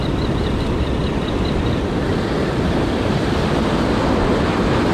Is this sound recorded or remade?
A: recorded